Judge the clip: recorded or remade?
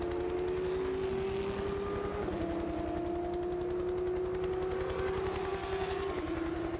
recorded